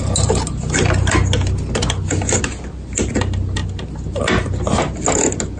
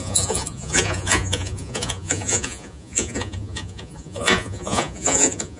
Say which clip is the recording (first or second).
first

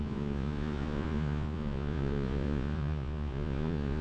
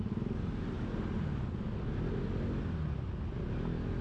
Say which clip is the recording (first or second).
second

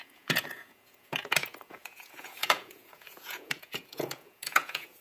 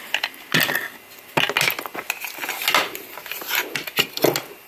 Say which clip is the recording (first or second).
second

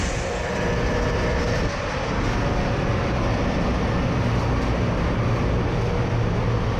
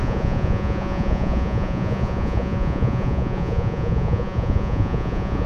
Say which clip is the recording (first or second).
first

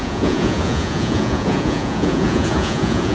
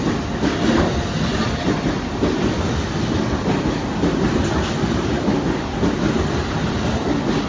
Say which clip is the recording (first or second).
second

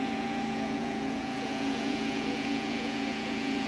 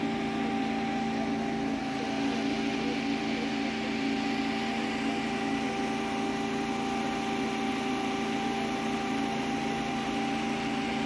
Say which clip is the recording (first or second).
second